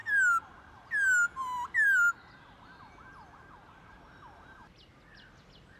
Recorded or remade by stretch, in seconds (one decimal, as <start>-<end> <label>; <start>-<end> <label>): 0.0-5.8 recorded